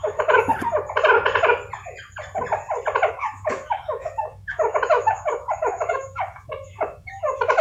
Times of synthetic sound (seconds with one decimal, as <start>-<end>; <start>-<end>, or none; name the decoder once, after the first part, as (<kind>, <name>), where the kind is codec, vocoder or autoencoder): 0.0-0.5 (autoencoder, DAC-VAE); 3.1-7.6